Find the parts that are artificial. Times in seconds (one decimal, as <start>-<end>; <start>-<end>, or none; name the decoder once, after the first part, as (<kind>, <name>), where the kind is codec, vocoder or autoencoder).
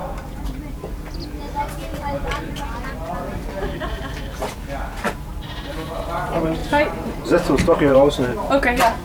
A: 0.0-0.7 (vocoder, BigVGAN v2); 6.6-8.5